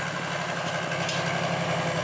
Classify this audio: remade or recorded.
recorded